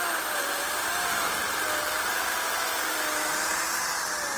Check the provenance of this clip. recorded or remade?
recorded